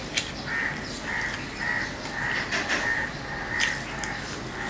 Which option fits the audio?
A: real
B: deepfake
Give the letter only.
A